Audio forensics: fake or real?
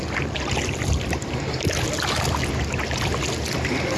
real